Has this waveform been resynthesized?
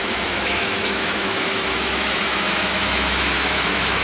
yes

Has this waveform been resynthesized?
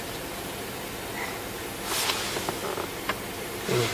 no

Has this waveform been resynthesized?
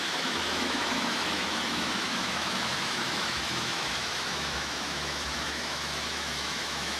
yes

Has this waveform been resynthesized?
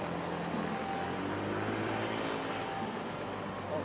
no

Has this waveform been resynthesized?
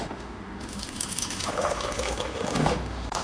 yes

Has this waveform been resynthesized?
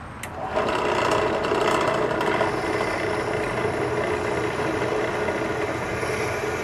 no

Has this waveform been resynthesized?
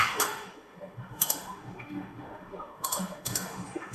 yes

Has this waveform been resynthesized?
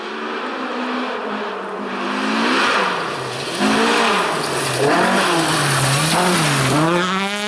no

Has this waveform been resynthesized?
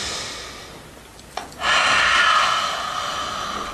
no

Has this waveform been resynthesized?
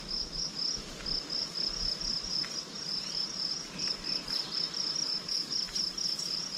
no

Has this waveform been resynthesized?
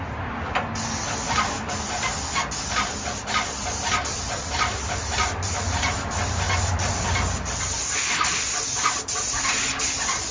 no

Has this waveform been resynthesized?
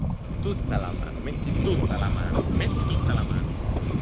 no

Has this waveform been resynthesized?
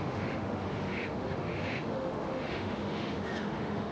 yes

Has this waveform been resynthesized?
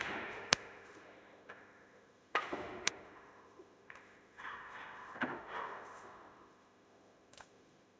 yes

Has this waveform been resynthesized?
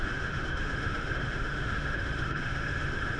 yes